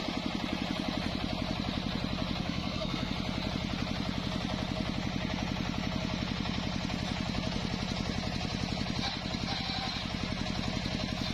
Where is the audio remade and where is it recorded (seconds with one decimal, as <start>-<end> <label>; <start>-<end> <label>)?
0.0-2.4 recorded; 2.4-3.1 remade; 3.1-11.3 recorded